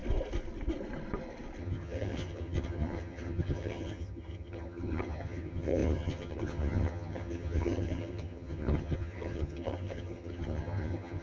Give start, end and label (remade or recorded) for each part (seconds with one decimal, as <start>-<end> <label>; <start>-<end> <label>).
0.0-1.6 recorded; 1.6-11.2 remade